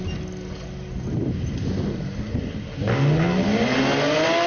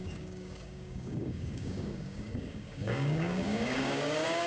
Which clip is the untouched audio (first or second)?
first